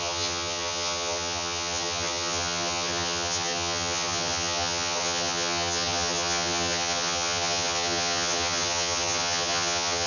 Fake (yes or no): yes